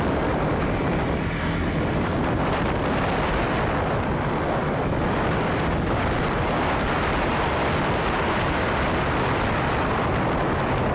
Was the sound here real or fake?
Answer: real